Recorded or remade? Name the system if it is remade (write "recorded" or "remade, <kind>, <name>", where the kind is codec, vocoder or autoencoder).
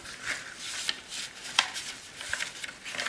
recorded